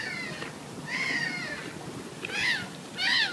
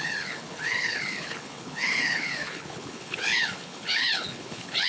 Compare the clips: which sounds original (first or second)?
first